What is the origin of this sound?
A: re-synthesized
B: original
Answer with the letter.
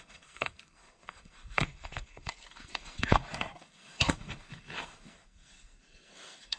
A